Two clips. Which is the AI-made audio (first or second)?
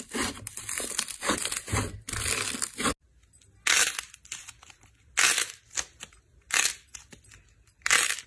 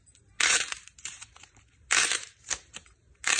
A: second